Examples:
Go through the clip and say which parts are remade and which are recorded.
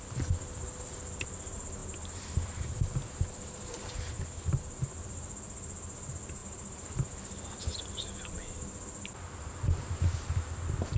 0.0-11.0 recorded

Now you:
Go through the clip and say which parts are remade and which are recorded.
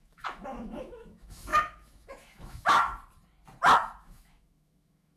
0.0-2.9 remade; 2.9-4.0 recorded; 4.0-5.2 remade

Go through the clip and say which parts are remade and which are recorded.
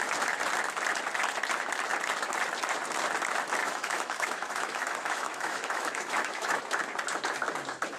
0.0-3.6 recorded; 3.6-6.6 remade; 6.6-8.0 recorded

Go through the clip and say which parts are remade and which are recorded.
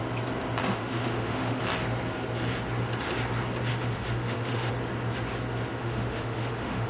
0.0-0.6 recorded; 0.6-1.6 remade; 1.6-3.7 recorded; 3.7-4.7 remade; 4.7-5.8 recorded; 5.8-6.9 remade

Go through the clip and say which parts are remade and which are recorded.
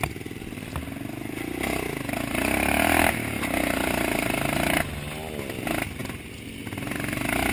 0.0-7.5 recorded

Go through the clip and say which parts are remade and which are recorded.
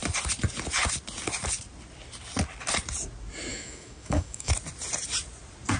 0.0-3.5 recorded; 3.5-4.5 remade; 4.5-5.8 recorded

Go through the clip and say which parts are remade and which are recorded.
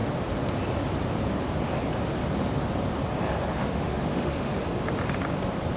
0.0-3.5 recorded; 3.5-4.5 remade; 4.5-5.8 recorded